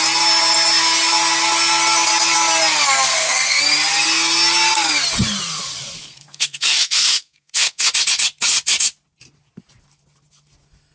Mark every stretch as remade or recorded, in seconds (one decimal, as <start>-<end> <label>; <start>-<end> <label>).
0.0-3.1 recorded; 3.1-3.6 remade; 3.6-6.0 recorded; 6.0-7.9 remade; 7.9-10.9 recorded

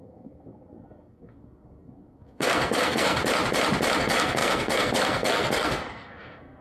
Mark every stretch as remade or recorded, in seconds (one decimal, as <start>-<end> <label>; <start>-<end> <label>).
0.0-3.2 remade; 3.2-4.0 recorded; 4.0-6.6 remade

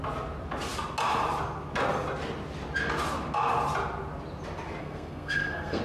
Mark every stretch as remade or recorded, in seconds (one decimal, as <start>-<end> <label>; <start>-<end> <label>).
0.0-4.8 recorded; 4.8-5.8 remade

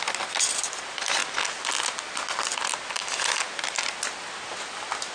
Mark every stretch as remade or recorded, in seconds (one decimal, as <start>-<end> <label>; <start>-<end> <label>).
0.0-5.1 recorded